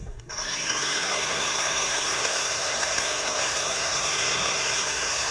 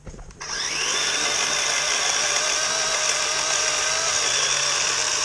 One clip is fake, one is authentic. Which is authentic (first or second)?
second